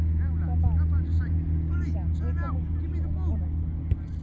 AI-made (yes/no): no